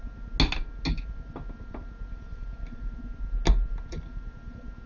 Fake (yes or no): no